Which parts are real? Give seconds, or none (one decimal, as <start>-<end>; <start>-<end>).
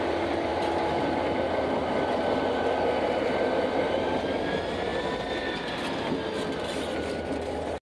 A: 0.0-7.8